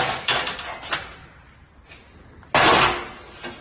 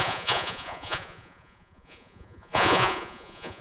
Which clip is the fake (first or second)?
second